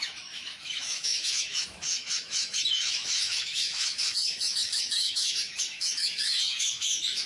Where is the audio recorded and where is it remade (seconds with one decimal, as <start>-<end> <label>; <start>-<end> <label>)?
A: 0.0-7.3 remade